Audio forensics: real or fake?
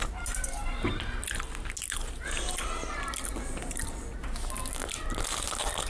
real